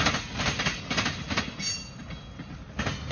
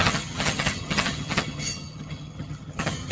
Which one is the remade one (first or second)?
second